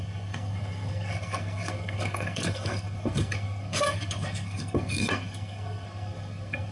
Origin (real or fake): fake